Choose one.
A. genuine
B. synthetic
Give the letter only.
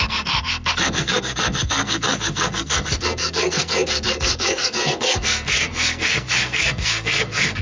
B